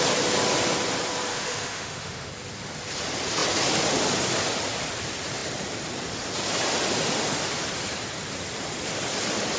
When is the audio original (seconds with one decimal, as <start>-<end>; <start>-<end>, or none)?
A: 0.0-1.3; 2.3-9.6